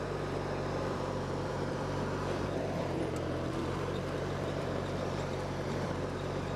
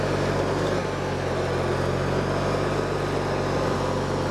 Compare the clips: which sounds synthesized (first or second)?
first